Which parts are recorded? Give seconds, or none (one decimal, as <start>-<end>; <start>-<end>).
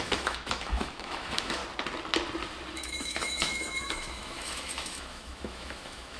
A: 1.6-2.7